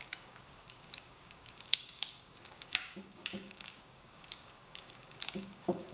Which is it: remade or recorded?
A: remade